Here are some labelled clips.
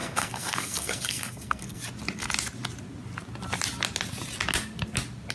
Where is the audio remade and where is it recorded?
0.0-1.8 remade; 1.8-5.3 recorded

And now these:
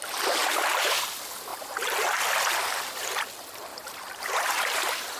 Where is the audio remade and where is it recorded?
0.0-0.4 recorded; 0.4-1.0 remade; 1.0-1.5 recorded; 1.5-2.2 remade; 2.2-3.7 recorded; 3.7-5.2 remade

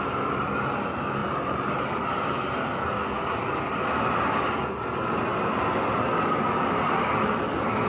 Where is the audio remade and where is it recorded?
0.0-1.2 recorded; 1.2-2.5 remade; 2.5-7.9 recorded